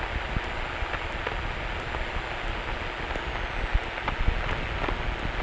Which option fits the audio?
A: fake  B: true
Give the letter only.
B